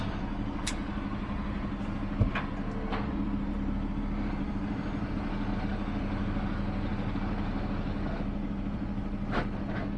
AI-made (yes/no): no